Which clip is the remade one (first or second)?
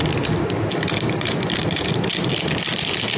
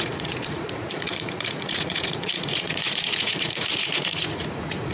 second